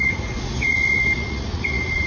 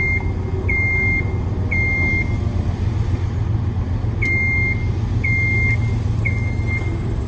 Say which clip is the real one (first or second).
second